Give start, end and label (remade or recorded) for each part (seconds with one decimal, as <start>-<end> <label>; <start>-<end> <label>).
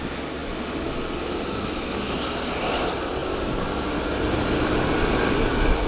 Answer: 0.0-5.9 recorded